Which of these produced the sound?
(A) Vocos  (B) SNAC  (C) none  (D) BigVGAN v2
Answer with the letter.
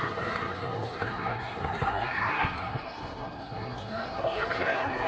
B